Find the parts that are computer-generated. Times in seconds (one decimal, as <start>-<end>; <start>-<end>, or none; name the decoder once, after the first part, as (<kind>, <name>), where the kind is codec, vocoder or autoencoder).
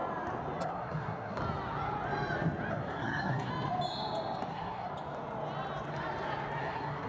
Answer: 0.6-1.4 (codec, SNAC); 2.7-3.5; 4.5-4.9; 6.6-7.1